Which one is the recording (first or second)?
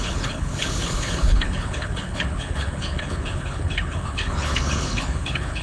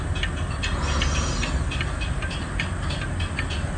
second